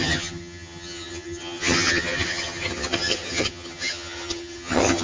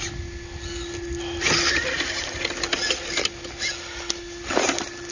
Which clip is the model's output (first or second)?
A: first